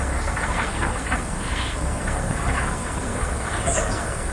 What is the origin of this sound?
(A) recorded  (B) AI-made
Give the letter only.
B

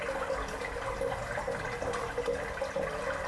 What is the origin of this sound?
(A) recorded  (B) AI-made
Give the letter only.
A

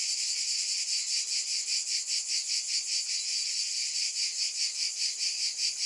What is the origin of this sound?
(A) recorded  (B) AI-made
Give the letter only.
A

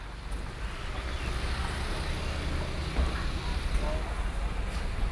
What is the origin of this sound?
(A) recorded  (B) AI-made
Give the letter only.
A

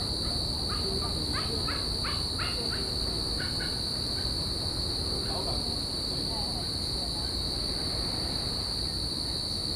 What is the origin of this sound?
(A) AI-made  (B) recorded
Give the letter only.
B